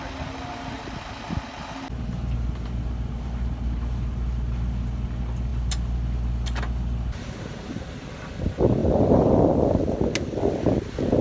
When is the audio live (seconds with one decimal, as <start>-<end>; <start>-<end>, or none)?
0.0-11.2